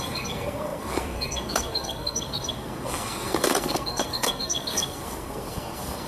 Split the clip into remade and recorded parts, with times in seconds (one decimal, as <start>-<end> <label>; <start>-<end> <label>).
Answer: 0.0-6.1 remade

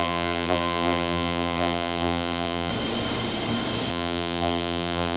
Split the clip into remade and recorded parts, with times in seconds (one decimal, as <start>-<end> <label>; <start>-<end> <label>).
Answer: 0.0-2.7 remade; 2.7-3.9 recorded; 3.9-5.2 remade